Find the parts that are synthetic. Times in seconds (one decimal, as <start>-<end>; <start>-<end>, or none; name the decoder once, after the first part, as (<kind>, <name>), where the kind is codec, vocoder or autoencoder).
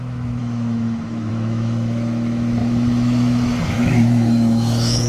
0.0-5.1 (autoencoder, DAC-VAE)